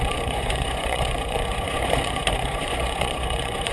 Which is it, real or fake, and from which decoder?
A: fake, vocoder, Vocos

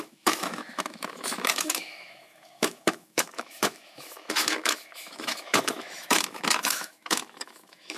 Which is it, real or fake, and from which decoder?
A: fake, autoencoder, DAC-VAE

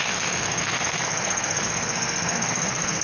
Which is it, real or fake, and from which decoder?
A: fake, codec, SNAC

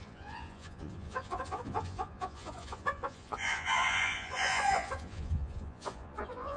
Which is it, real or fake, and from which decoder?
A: fake, vocoder, Vocos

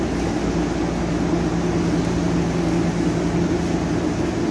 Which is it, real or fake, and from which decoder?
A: real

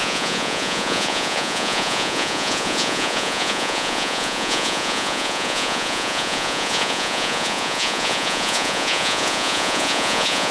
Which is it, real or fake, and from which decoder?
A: fake, vocoder, Vocos